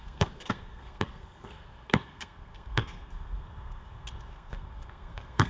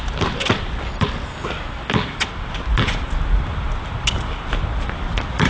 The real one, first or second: second